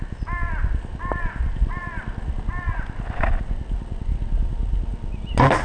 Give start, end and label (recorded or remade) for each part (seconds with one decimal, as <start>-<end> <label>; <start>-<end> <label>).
0.0-5.6 recorded